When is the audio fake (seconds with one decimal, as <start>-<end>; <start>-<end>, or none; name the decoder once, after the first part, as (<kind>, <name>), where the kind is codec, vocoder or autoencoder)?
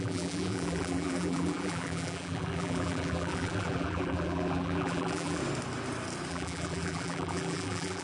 0.0-5.4 (vocoder, BigVGAN v2); 6.3-8.0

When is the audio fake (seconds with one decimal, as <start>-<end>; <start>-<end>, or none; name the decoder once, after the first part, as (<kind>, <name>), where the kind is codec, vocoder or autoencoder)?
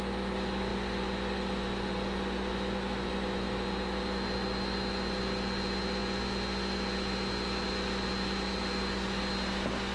none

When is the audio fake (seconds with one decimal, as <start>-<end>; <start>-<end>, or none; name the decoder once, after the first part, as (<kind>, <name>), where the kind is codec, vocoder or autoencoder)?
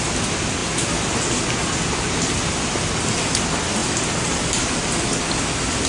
none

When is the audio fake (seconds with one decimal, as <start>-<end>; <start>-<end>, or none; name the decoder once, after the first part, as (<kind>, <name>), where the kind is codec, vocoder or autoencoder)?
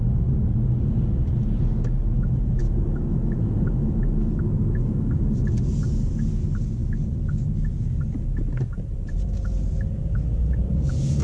10.4-11.2 (vocoder, BigVGAN v2)